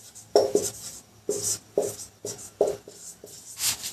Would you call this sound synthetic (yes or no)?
no